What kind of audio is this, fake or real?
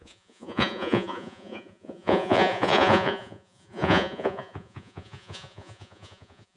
fake